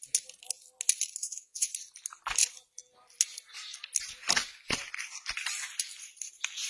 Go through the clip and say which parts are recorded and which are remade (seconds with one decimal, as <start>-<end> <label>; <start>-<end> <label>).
0.0-1.2 recorded; 1.2-1.7 remade; 1.7-6.7 recorded